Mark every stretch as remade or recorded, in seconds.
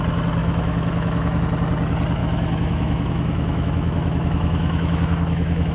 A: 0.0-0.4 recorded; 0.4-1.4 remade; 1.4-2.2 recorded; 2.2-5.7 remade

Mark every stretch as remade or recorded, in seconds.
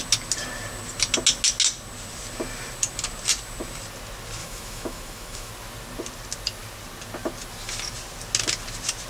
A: 0.0-4.4 recorded; 4.4-5.5 remade; 5.5-9.1 recorded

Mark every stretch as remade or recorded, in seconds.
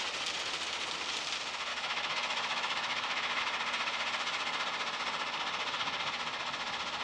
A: 0.0-1.7 recorded; 1.7-3.4 remade; 3.4-7.0 recorded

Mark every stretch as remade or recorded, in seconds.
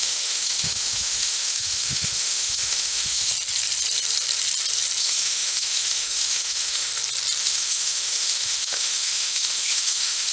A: 0.0-3.3 remade; 3.3-5.0 recorded; 5.0-6.9 remade; 6.9-7.4 recorded; 7.4-10.3 remade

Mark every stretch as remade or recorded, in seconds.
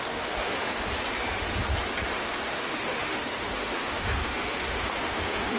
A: 0.0-0.7 remade; 0.7-2.5 recorded; 2.5-5.6 remade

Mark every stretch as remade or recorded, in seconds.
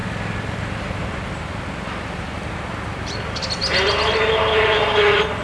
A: 0.0-5.4 recorded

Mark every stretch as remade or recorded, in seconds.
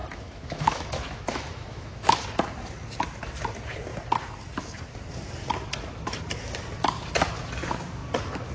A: 0.0-2.2 remade; 2.2-8.5 recorded